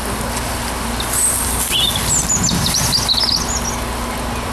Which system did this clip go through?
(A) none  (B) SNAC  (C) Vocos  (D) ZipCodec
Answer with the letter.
A